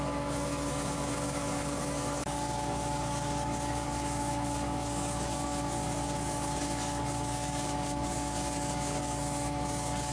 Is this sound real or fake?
fake